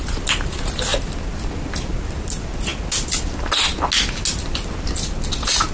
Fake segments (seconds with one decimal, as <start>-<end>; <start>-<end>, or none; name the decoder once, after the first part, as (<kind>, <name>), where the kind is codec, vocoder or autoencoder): none